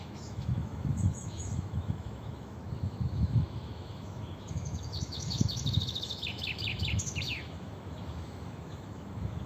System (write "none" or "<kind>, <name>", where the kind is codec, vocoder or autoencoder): autoencoder, DAC-VAE